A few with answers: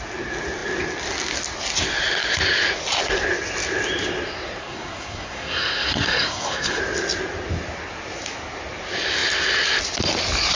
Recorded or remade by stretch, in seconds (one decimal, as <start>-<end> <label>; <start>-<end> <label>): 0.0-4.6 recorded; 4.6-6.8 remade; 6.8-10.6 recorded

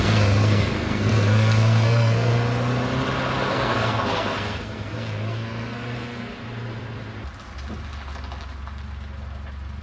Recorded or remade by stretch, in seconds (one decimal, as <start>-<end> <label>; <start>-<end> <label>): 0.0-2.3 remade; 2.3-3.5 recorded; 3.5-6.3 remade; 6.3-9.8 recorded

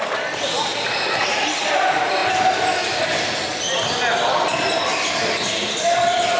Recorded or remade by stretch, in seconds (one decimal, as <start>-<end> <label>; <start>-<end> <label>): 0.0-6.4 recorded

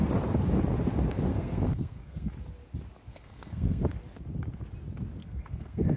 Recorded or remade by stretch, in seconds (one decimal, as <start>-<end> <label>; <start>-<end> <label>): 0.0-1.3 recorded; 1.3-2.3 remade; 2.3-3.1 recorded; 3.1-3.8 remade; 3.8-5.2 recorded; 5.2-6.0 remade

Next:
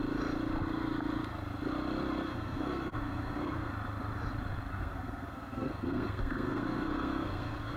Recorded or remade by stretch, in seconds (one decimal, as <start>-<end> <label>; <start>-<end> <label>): 0.0-2.3 recorded; 2.3-3.7 remade; 3.7-4.7 recorded; 4.7-7.8 remade

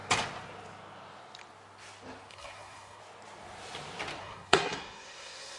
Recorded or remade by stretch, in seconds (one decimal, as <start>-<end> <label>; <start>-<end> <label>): 0.0-2.3 recorded; 2.3-3.0 remade; 3.0-4.2 recorded; 4.2-5.6 remade

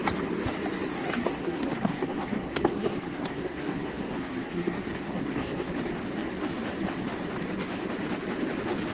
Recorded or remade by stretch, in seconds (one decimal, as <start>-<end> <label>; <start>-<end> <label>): 0.0-0.9 recorded; 0.9-5.7 remade; 5.7-8.9 recorded

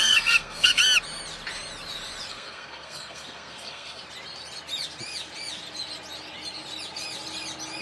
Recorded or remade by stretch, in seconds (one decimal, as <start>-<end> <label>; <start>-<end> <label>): 0.0-0.8 remade; 0.8-2.3 recorded; 2.3-4.0 remade; 4.0-7.8 recorded